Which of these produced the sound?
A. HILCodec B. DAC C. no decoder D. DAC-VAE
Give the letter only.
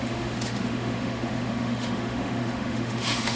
D